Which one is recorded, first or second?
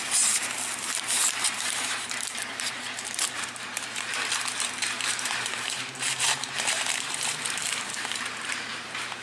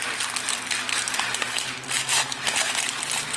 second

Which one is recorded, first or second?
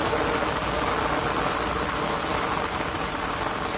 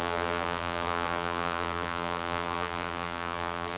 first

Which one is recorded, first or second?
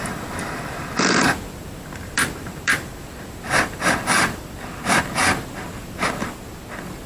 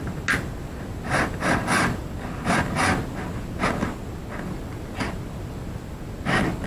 second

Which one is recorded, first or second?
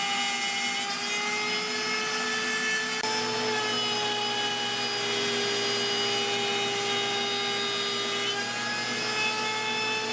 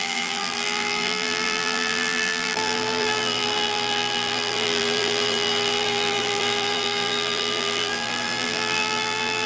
first